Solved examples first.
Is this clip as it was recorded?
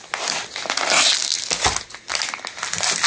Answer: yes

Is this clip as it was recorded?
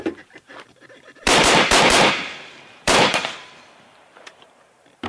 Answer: no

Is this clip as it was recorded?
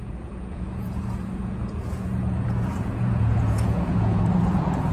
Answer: no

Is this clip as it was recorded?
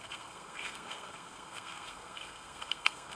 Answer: no